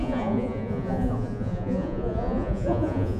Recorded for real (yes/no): no